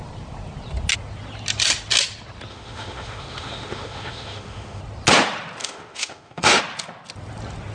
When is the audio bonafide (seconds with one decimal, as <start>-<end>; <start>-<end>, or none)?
0.0-2.5; 4.8-5.6; 6.6-7.7